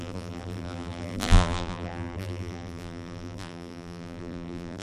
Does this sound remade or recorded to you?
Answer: remade